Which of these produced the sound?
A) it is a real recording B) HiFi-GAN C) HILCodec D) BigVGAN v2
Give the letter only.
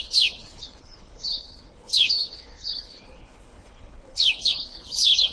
C